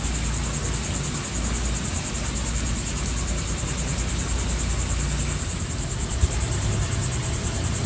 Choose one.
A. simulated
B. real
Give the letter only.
B